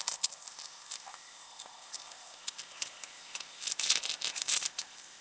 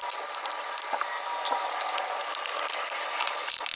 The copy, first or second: first